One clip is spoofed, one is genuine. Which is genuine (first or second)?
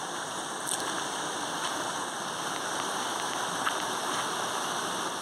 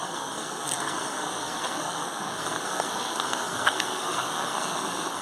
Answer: first